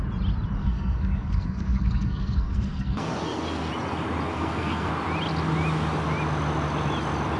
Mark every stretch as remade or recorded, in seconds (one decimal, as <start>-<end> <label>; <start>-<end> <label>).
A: 0.0-0.6 recorded; 0.6-3.7 remade; 3.7-4.3 recorded; 4.3-4.9 remade; 4.9-7.4 recorded